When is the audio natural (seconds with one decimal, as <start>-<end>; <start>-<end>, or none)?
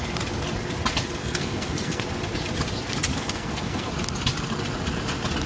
0.0-1.2; 2.0-3.1; 3.9-5.5